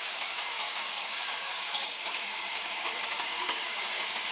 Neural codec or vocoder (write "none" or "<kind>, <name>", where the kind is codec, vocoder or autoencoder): codec, DAC